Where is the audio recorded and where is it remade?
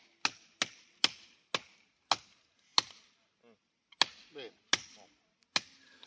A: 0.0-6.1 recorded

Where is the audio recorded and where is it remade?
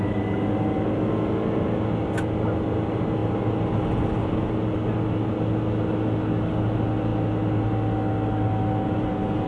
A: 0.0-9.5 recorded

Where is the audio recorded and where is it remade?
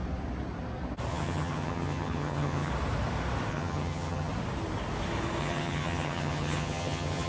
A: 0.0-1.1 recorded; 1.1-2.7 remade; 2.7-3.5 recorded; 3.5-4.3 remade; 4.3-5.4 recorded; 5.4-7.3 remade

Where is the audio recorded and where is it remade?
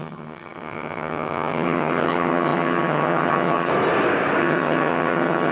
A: 0.0-3.7 remade; 3.7-4.4 recorded; 4.4-5.5 remade